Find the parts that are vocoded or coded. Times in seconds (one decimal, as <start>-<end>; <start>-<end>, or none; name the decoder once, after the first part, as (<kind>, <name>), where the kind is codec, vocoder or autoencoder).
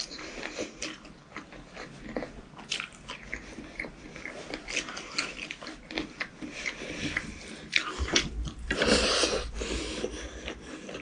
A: 0.0-1.2 (vocoder, BigVGAN v2); 3.9-11.0